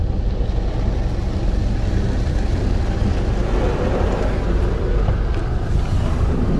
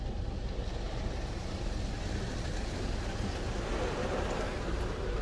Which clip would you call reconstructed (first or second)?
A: second